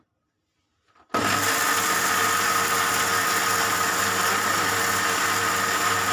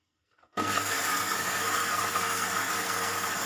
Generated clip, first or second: second